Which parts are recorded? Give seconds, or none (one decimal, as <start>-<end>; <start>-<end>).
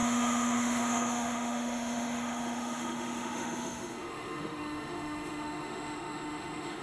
none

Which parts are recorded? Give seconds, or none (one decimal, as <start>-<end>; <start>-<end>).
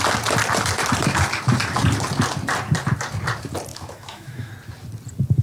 0.0-3.7; 4.5-5.4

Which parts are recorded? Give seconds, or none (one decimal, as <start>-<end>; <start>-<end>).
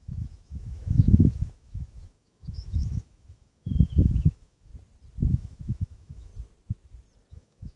4.7-5.3; 6.3-7.3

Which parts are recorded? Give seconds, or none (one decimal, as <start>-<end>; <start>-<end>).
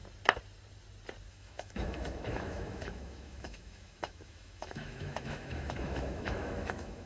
0.0-1.3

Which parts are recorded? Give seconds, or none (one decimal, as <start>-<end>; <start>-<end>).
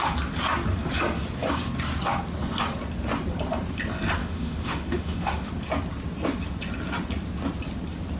0.0-4.2; 5.5-8.2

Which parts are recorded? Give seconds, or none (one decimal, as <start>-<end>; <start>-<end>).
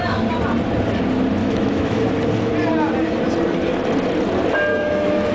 0.0-1.4; 2.0-4.7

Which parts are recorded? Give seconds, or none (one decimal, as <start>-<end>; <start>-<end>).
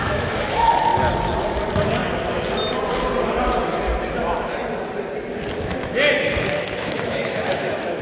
0.9-4.1; 4.6-5.6